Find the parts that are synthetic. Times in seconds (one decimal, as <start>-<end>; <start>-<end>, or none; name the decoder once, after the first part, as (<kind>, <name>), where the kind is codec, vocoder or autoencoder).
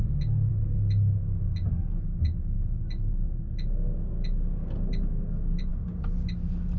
none